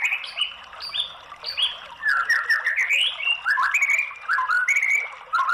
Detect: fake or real real